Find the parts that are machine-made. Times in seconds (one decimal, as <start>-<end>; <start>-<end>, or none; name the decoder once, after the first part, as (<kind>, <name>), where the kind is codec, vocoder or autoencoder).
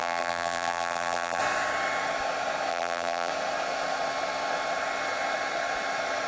0.0-1.4 (vocoder, BigVGAN v2); 2.7-3.3